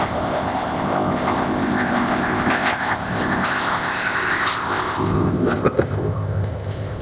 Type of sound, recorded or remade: remade